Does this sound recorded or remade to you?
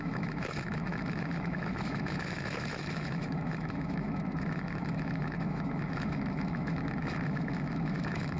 remade